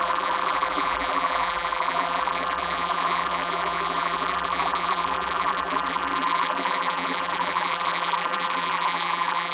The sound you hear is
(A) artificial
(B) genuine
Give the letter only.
A